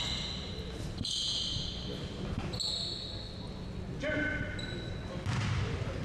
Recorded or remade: recorded